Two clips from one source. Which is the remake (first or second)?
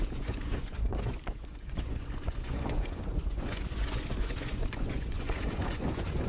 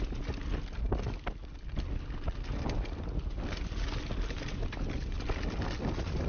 first